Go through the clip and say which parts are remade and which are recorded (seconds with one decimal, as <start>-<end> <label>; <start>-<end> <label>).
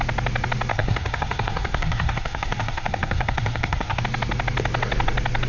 0.0-0.7 recorded; 0.7-4.0 remade; 4.0-5.5 recorded